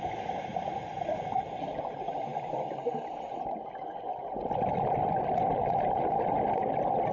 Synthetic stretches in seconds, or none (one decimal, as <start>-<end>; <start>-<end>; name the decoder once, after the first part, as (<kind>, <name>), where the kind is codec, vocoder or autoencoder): none